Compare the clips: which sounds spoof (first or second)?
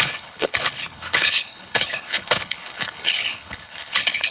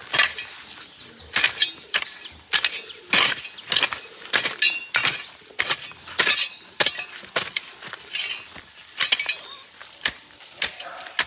first